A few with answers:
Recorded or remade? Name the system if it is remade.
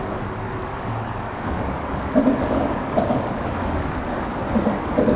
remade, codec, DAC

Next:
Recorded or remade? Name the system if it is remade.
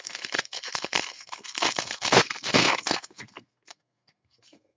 remade, codec, SNAC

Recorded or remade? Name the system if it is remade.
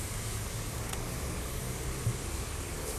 remade, codec, DAC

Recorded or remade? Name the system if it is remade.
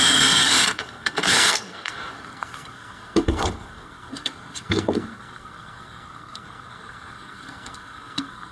remade, codec, SNAC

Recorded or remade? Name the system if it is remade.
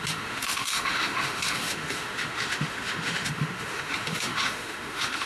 remade, autoencoder, DAC-VAE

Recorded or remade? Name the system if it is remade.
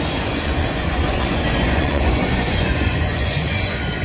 remade, vocoder, Vocos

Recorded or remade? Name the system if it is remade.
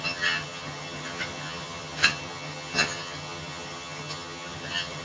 remade, vocoder, HiFi-GAN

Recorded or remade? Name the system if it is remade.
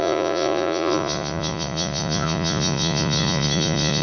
remade, vocoder, Vocos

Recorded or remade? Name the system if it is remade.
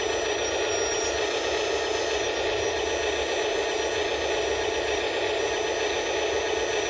recorded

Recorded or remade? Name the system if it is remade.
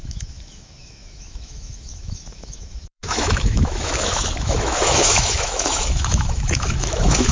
remade, autoencoder, DAC-VAE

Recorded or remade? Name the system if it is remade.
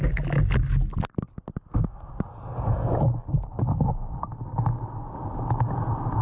recorded